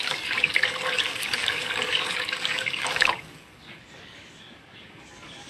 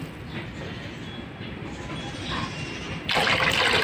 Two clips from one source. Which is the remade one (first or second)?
first